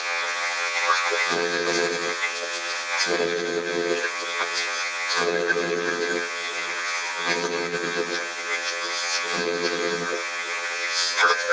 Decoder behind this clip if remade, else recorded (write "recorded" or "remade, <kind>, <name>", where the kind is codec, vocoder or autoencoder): remade, vocoder, HiFi-GAN